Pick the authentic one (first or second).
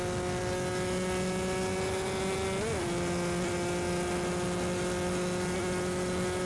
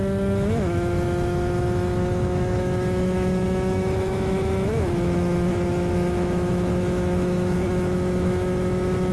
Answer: first